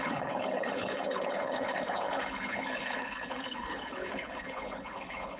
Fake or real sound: fake